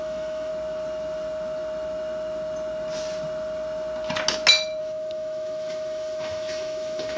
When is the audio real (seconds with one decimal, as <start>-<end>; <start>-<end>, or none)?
0.5-4.8